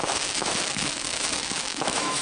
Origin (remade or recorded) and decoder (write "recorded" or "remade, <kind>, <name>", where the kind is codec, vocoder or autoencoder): remade, autoencoder, DAC-VAE